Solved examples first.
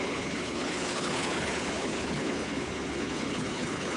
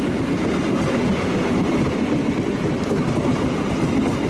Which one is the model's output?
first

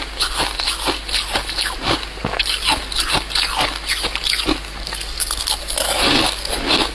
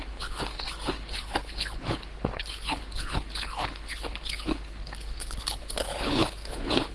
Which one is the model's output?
second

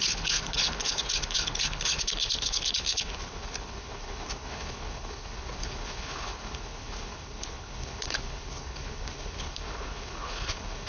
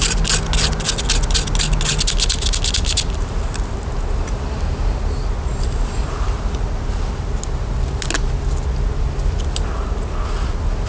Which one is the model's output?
first